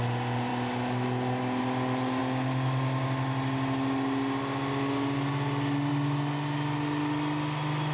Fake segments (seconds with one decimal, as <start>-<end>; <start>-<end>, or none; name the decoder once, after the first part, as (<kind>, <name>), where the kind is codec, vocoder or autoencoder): none